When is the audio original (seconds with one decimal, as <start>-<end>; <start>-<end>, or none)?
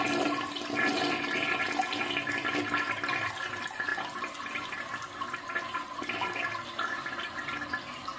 0.0-8.2